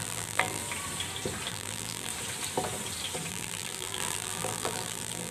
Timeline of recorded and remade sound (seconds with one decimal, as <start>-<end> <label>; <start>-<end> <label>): 0.0-0.6 remade; 0.6-1.5 recorded; 1.5-2.1 remade; 2.1-3.3 recorded; 3.3-5.3 remade